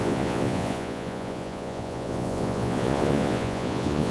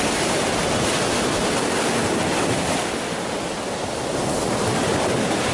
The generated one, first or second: first